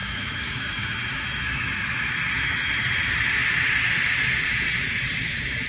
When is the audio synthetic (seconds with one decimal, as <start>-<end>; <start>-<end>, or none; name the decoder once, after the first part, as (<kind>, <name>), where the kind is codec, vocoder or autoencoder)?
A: 0.0-2.0 (autoencoder, DAC-VAE)